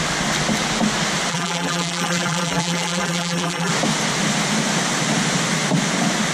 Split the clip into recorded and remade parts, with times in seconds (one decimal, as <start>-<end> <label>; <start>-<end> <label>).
0.0-1.3 recorded; 1.3-3.7 remade; 3.7-6.3 recorded